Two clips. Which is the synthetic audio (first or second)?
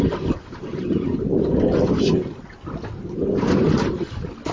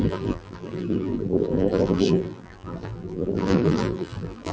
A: second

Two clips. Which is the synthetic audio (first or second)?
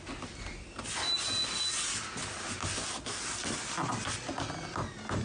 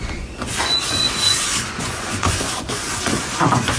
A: second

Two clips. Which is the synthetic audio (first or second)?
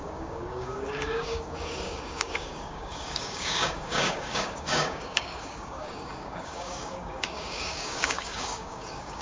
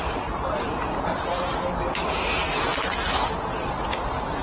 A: first